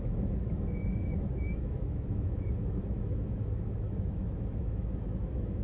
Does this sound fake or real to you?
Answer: fake